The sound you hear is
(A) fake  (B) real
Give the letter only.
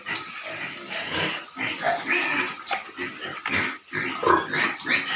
B